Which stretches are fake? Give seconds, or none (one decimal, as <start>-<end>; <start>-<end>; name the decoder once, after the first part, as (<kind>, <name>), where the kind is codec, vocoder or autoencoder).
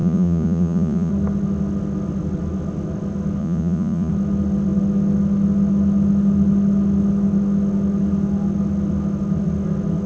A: 0.0-1.1 (vocoder, Vocos); 3.4-4.1